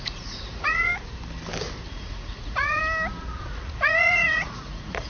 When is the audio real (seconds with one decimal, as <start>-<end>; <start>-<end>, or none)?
0.9-1.9; 2.8-3.4

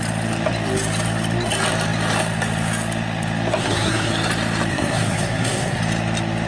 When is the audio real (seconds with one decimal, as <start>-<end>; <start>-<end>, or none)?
0.0-3.6; 4.1-4.7; 5.8-6.5

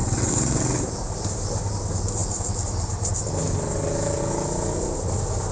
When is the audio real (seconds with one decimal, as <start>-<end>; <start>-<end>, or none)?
0.8-5.5

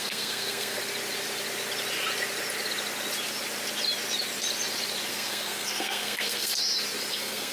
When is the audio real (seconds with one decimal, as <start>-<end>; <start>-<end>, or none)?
0.8-5.1; 6.5-7.1

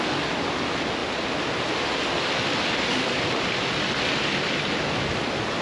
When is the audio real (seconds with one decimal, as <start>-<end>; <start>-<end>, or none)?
0.0-5.6

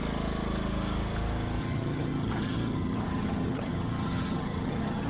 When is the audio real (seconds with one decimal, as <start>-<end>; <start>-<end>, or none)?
0.0-1.6